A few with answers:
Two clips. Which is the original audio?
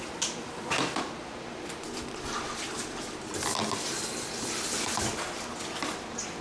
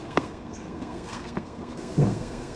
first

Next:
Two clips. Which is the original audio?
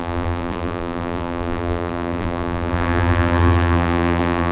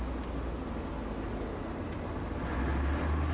second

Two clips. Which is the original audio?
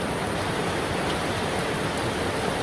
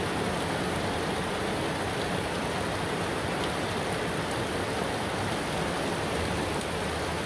second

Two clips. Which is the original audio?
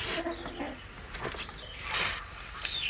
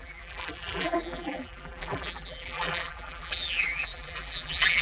first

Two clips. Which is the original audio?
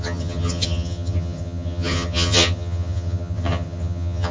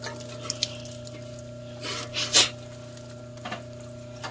second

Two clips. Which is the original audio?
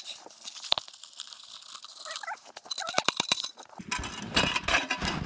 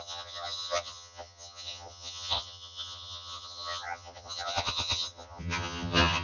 first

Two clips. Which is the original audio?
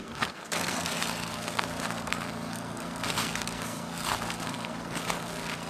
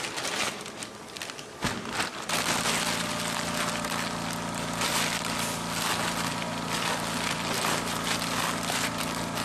second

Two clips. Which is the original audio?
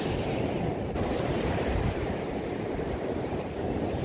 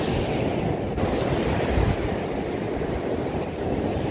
second